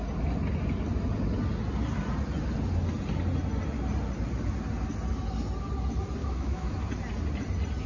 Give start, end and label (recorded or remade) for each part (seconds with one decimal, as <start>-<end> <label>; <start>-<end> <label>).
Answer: 0.0-6.2 recorded; 6.2-6.8 remade; 6.8-7.9 recorded